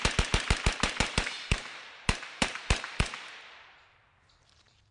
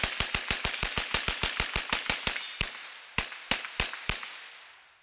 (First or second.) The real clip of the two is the second